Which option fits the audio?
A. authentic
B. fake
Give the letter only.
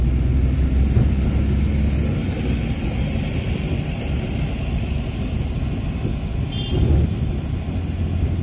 A